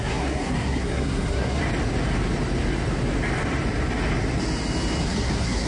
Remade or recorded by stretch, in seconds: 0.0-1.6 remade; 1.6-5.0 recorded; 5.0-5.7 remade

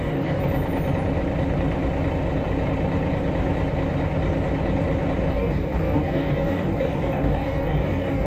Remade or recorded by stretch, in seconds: 0.0-0.4 remade; 0.4-5.3 recorded; 5.3-8.3 remade

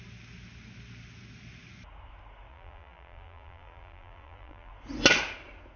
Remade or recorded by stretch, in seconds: 0.0-2.5 recorded; 2.5-4.7 remade; 4.7-5.8 recorded

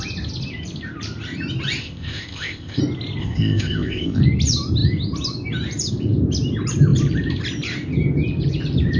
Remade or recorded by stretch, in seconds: 0.0-1.8 recorded; 1.8-2.8 remade; 2.8-3.2 recorded; 3.2-4.2 remade; 4.2-9.0 recorded

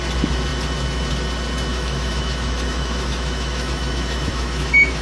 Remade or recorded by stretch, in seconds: 0.0-1.7 recorded; 1.7-5.0 remade

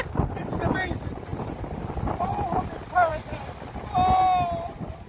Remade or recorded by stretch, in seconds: 0.0-5.1 recorded

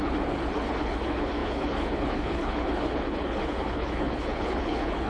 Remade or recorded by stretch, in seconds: 0.0-5.1 remade

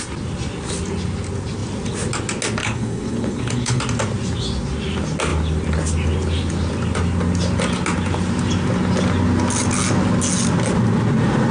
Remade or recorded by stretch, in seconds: 0.0-2.6 recorded; 2.6-3.8 remade; 3.8-11.5 recorded